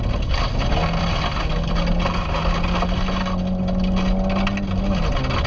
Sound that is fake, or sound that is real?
real